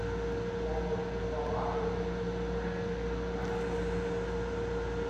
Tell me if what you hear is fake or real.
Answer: real